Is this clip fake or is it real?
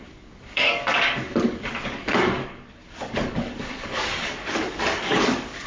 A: fake